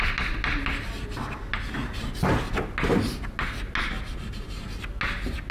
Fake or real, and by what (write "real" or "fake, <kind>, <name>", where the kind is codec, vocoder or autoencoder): real